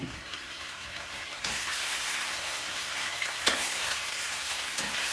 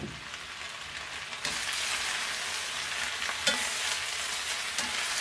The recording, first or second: second